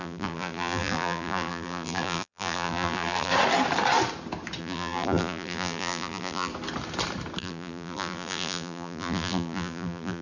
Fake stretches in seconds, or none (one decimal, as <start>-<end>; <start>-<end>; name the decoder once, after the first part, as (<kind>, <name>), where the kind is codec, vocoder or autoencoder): 0.0-3.3 (vocoder, BigVGAN v2); 4.6-6.5; 7.4-10.2